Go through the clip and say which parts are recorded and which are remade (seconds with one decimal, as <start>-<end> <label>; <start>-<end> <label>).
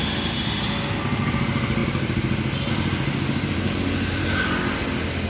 0.0-5.3 recorded